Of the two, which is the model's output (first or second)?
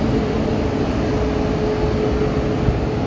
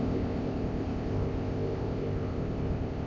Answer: second